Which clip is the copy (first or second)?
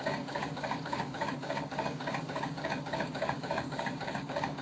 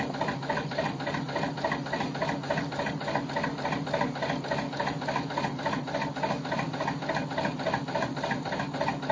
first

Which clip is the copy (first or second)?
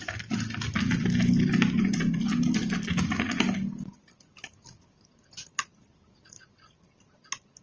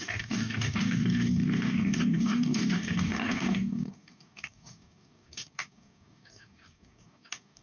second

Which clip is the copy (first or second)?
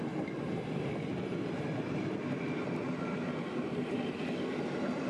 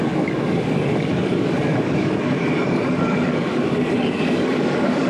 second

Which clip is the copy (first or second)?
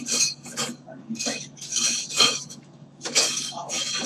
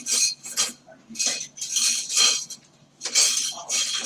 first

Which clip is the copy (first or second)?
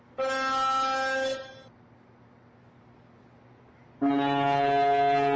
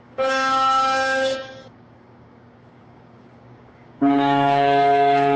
second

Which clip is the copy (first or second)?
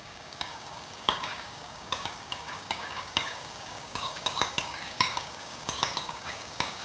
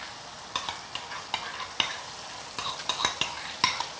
first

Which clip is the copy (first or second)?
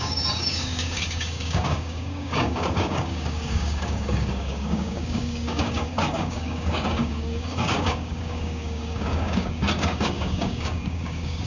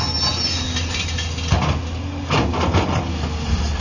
first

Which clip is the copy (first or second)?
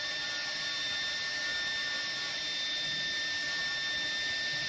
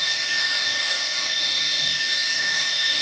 second